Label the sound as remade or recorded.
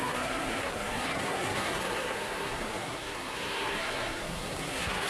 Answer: remade